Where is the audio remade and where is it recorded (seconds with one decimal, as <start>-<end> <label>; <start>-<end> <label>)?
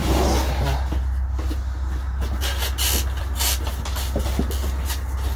0.0-5.4 recorded